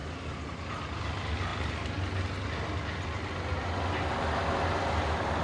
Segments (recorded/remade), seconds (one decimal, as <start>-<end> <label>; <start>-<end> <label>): 0.0-5.4 recorded